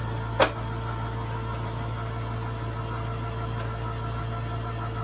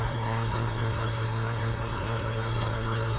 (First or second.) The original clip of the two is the first